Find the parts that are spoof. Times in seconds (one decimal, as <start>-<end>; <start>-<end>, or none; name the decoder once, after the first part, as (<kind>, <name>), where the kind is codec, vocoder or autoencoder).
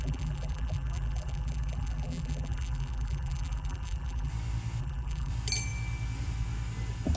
0.0-4.3 (vocoder, BigVGAN v2); 4.8-5.3